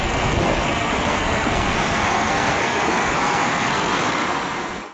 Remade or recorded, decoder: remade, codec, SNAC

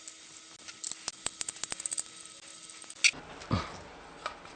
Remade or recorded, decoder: recorded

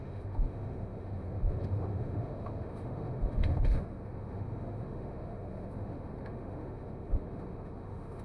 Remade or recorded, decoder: remade, autoencoder, DAC-VAE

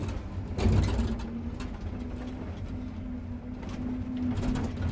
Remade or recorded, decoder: recorded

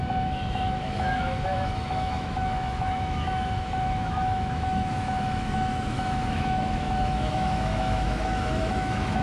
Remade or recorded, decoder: remade, autoencoder, DAC-VAE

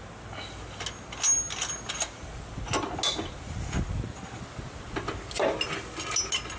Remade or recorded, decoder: recorded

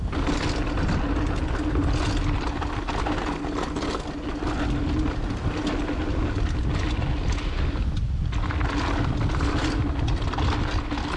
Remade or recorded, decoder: recorded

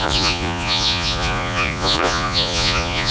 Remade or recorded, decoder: remade, vocoder, Vocos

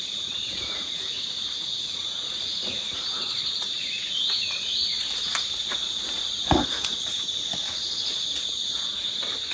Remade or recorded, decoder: remade, vocoder, Vocos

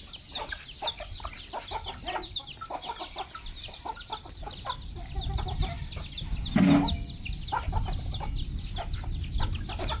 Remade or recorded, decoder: recorded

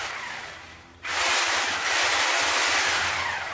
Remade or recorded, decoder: recorded